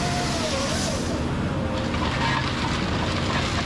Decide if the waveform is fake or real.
real